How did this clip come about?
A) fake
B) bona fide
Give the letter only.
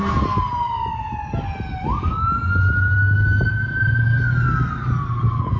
B